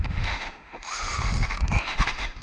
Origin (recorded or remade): remade